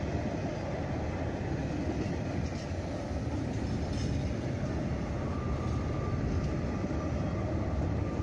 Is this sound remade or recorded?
recorded